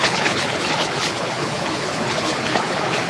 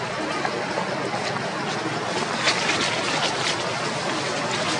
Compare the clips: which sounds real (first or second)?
second